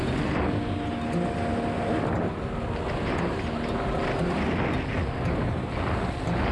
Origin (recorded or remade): recorded